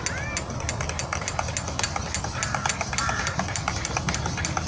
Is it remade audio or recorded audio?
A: recorded